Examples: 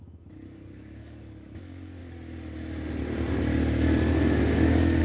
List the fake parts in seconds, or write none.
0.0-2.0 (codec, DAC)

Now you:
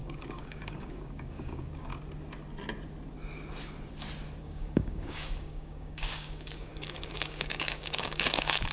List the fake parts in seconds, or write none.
0.0-1.9 (codec, DAC); 4.4-8.7

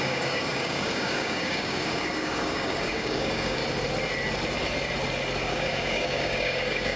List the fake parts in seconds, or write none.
0.0-3.6 (codec, DAC); 5.5-7.0

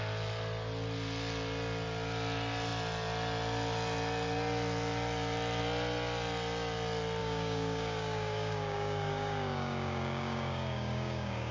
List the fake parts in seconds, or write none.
7.2-11.5 (codec, DAC)

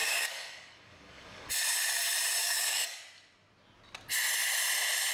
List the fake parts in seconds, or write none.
0.0-1.5 (codec, DAC); 2.4-3.0

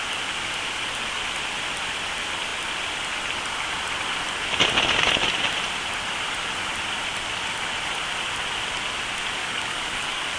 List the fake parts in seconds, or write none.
9.4-10.4 (codec, DAC)

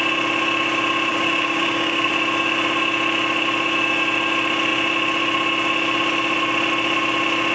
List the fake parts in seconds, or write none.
1.1-2.1 (codec, DAC)

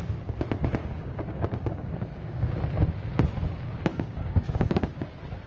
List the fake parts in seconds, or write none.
0.8-2.5 (codec, DAC); 3.9-5.1